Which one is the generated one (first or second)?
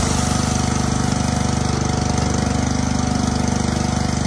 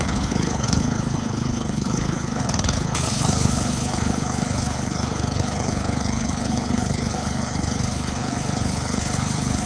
second